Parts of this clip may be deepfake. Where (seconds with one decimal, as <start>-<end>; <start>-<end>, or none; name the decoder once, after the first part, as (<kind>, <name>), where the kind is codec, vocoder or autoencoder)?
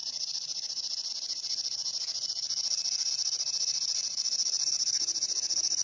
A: none